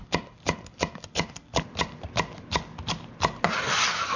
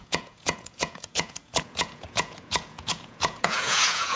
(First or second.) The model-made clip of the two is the second